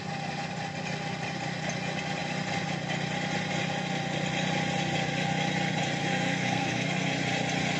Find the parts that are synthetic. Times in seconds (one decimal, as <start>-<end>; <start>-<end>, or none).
6.0-7.1